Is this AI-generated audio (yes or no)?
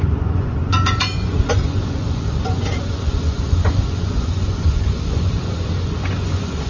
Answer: yes